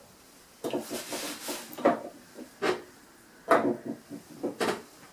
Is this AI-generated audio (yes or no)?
no